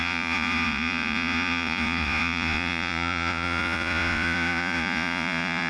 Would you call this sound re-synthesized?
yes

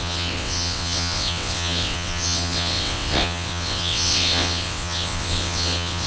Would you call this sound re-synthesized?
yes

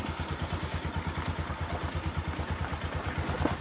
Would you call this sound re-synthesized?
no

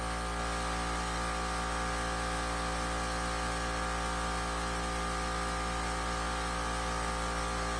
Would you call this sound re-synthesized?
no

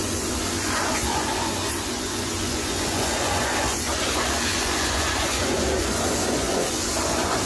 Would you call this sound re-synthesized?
yes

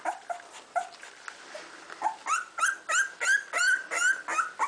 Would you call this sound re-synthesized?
no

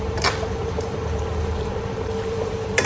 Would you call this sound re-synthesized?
yes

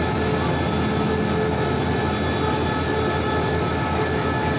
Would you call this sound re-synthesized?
no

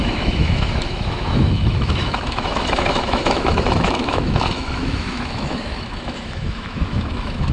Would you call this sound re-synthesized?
yes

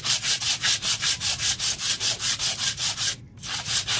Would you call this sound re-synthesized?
no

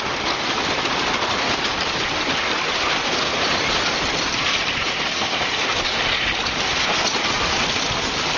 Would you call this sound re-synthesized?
no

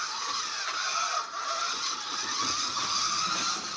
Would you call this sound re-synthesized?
no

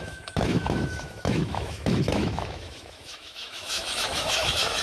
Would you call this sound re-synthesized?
yes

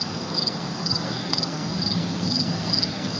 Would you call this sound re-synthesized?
yes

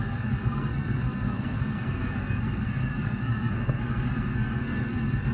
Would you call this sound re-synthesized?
yes